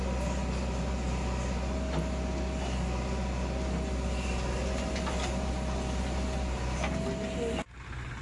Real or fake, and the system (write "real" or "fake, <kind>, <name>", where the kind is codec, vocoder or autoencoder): real